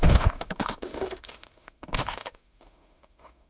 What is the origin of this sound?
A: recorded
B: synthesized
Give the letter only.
B